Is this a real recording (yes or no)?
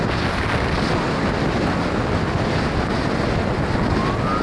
yes